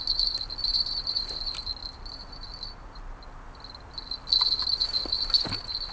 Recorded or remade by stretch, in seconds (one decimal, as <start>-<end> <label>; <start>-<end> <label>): 0.0-5.9 recorded